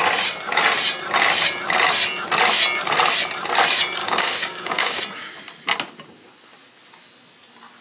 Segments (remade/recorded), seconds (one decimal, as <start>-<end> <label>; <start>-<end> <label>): 0.0-4.0 recorded; 4.0-5.0 remade; 5.0-7.8 recorded